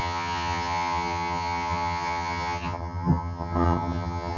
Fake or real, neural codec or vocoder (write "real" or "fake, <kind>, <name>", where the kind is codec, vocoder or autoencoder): fake, vocoder, HiFi-GAN